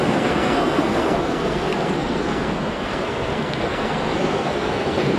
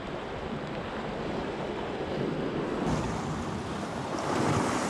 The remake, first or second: first